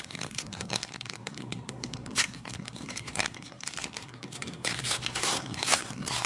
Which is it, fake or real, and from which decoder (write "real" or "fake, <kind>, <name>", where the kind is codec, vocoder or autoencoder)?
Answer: fake, codec, SNAC